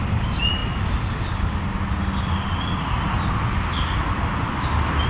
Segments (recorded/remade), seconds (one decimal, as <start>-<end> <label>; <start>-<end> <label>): 0.0-5.1 recorded